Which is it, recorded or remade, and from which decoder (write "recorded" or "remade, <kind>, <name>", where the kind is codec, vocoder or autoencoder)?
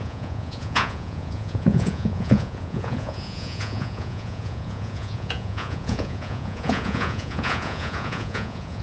remade, vocoder, Vocos